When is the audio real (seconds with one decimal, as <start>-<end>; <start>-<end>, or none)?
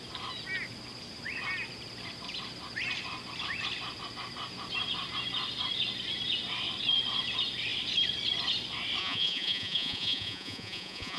0.0-9.0